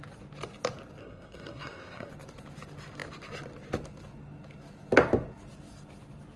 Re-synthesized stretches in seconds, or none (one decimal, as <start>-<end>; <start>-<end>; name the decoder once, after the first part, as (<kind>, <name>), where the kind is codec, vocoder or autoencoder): 1.0-2.1 (codec, SNAC)